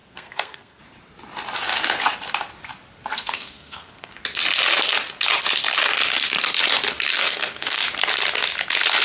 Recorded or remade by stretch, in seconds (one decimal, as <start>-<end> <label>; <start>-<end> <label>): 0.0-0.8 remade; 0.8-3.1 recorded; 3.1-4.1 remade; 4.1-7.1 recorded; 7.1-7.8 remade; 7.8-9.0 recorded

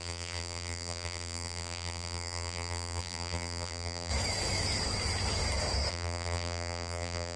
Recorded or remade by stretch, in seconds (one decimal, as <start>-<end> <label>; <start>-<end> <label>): 0.0-4.1 remade; 4.1-5.9 recorded; 5.9-7.4 remade

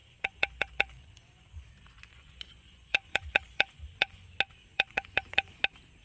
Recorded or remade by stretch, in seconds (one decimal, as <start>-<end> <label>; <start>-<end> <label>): 0.0-1.7 remade; 1.7-2.1 recorded; 2.1-4.3 remade; 4.3-4.7 recorded; 4.7-5.6 remade; 5.6-6.0 recorded